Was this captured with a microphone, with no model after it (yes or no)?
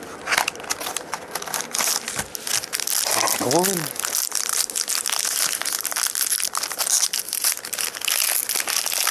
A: yes